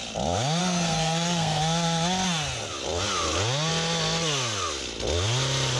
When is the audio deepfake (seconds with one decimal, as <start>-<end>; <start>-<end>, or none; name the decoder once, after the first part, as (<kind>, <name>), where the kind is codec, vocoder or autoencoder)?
0.6-1.6 (codec, SNAC)